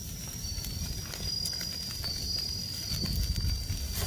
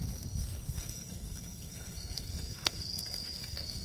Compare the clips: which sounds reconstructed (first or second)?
second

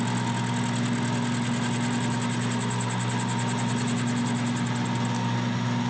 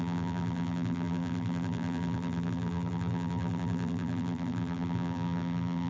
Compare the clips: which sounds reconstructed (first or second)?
second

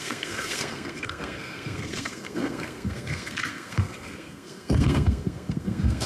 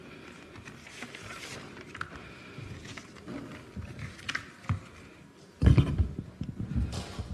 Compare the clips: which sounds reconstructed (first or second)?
first